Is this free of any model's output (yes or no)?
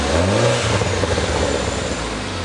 yes